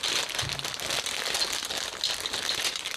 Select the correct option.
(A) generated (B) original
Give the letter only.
B